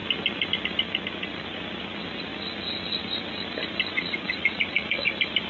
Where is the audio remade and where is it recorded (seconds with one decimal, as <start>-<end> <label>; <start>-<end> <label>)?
0.0-3.9 recorded; 3.9-5.1 remade; 5.1-5.5 recorded